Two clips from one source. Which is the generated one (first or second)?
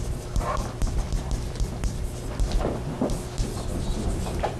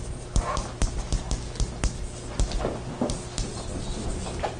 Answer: first